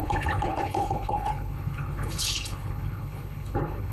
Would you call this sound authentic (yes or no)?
no